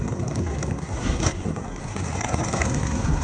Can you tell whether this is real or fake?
fake